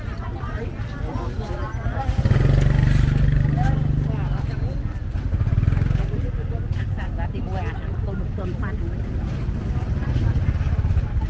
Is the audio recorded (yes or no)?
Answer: yes